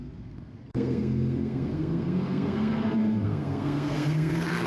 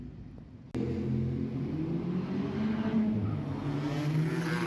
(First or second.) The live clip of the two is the second